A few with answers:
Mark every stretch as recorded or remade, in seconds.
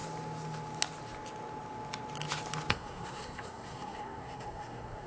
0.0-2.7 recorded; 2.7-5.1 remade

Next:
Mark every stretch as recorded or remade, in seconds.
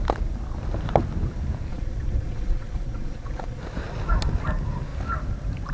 0.0-1.7 recorded; 1.7-3.6 remade; 3.6-5.7 recorded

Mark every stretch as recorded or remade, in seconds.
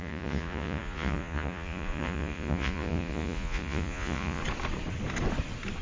0.0-4.4 remade; 4.4-5.8 recorded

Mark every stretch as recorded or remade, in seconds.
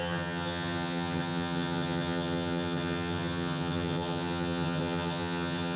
0.0-5.8 remade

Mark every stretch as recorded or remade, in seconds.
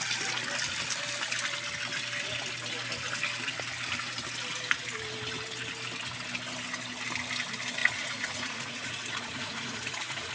0.0-7.8 recorded; 7.8-10.3 remade